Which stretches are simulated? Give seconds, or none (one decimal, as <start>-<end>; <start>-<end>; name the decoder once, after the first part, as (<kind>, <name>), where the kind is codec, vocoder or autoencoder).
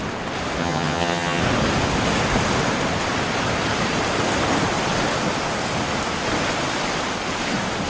0.6-1.4 (vocoder, HiFi-GAN)